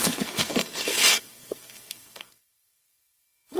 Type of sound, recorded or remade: remade